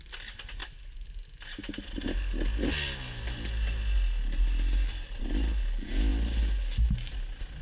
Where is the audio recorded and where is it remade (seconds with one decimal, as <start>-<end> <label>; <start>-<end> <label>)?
0.0-7.6 recorded